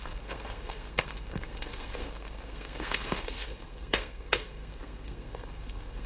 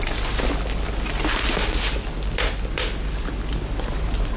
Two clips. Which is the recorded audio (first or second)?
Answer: second